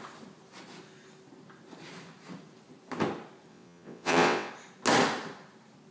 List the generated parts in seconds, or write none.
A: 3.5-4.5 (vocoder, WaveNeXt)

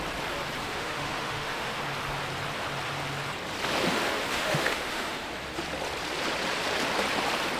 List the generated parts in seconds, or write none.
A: 0.6-1.8 (autoencoder, DAC-VAE); 3.9-5.3

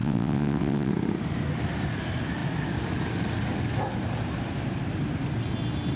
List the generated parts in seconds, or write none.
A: 0.0-0.9 (vocoder, WaveNeXt)

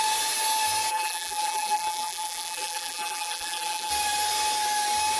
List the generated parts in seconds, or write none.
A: 0.9-3.9 (vocoder, BigVGAN v2)

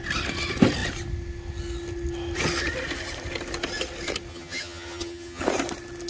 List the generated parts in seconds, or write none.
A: 4.3-5.4 (vocoder, HiFi-GAN)